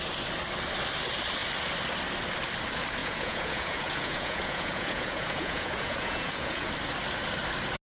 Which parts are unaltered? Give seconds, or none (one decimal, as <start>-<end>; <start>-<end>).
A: 0.0-3.0; 6.7-7.9